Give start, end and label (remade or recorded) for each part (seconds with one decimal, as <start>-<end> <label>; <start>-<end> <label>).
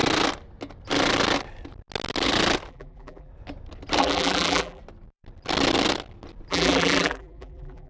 0.0-2.7 recorded; 2.7-3.3 remade; 3.3-4.0 recorded; 4.0-4.8 remade; 4.8-6.5 recorded; 6.5-7.9 remade